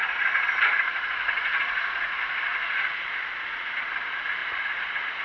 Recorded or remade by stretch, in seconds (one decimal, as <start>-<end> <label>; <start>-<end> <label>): 0.0-2.9 remade; 2.9-4.4 recorded; 4.4-5.2 remade